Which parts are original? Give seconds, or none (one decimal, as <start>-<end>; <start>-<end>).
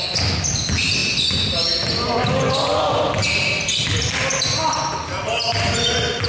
0.0-6.3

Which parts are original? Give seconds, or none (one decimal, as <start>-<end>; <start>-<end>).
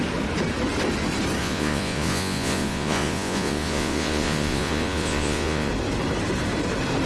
0.0-1.4; 5.7-7.1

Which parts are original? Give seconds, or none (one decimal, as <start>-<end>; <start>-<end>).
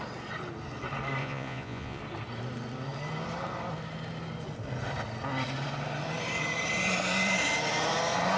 0.0-1.2; 2.0-8.4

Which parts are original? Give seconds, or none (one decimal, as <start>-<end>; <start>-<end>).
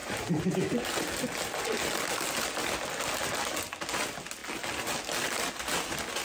0.0-6.2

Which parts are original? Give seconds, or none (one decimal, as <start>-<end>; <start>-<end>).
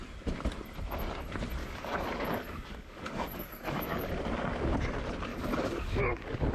0.0-1.6; 4.1-5.3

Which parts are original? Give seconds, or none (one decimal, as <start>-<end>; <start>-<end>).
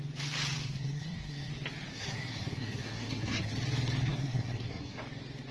0.0-0.6; 1.5-1.9; 3.5-4.1; 5.0-5.5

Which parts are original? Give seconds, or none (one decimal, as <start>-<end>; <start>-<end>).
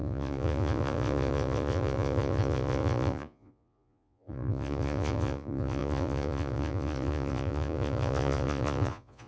none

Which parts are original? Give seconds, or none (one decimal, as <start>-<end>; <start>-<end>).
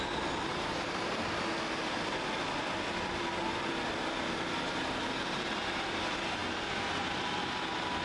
0.0-0.5; 1.1-8.0